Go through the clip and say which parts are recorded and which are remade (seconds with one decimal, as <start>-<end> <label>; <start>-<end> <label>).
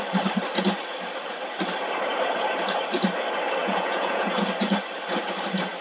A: 0.0-3.6 recorded; 3.6-4.4 remade; 4.4-5.8 recorded